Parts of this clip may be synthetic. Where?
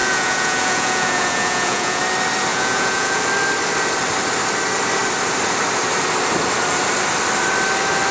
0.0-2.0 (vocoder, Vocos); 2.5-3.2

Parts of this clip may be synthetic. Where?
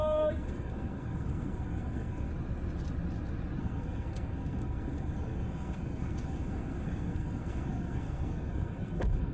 0.0-2.3 (codec, SNAC); 3.6-9.3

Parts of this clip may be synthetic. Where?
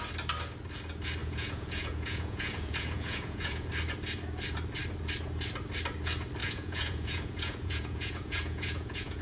1.2-3.7 (vocoder, Vocos); 6.4-9.2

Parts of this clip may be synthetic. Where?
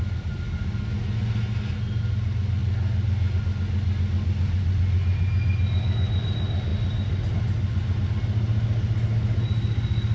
none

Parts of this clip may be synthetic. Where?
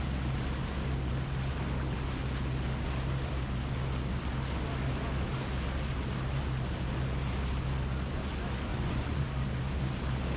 8.7-9.2 (vocoder, Vocos)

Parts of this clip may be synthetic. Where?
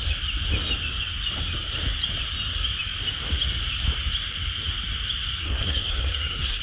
5.4-6.6 (codec, SNAC)